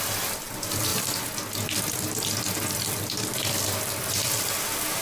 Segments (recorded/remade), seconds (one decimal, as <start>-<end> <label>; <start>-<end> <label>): 0.0-5.0 recorded